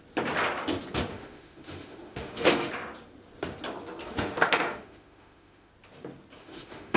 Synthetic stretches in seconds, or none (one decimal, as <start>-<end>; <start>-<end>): 1.1-2.7; 4.0-5.7; 6.4-7.0